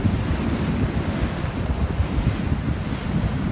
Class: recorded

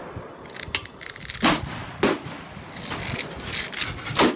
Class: recorded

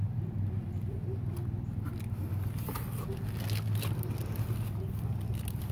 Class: recorded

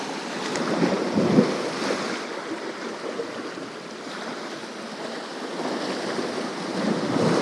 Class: recorded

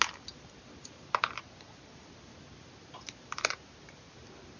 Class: recorded